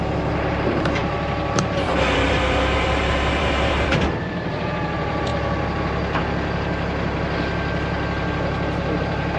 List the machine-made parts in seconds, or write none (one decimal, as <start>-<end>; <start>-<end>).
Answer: 0.0-9.4